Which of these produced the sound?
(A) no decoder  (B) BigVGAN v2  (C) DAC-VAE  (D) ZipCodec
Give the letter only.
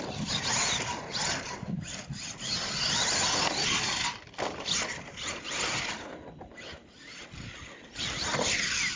A